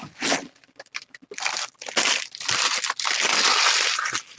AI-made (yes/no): no